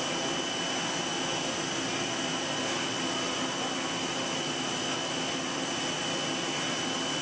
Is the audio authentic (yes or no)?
yes